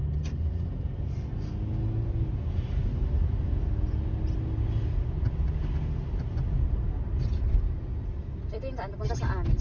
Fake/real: real